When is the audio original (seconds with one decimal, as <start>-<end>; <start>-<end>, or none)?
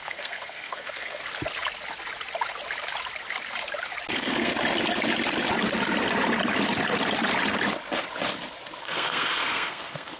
1.2-4.1; 4.5-8.8